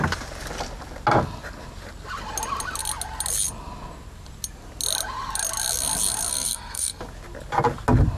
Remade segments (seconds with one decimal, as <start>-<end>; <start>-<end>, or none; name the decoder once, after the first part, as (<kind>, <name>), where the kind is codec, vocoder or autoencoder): 6.3-7.0 (codec, SNAC)